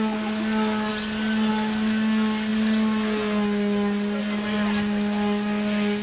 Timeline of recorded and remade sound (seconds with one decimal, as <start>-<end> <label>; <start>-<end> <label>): 0.0-6.0 recorded